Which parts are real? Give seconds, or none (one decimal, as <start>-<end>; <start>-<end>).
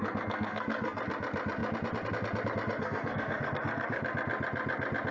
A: 1.0-2.8; 4.0-5.1